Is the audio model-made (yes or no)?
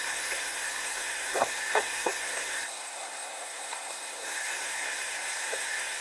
yes